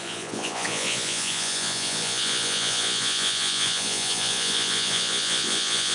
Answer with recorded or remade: remade